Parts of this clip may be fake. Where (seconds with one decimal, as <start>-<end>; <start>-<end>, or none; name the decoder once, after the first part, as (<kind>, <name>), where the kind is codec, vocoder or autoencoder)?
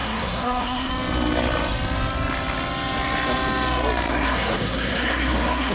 0.0-0.9 (codec, SNAC); 4.1-5.7